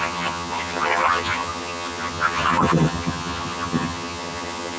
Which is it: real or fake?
fake